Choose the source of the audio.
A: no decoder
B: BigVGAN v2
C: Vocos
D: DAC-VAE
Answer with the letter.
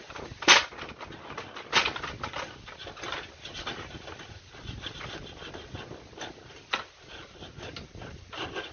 A